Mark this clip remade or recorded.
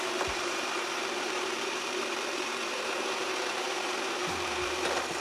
remade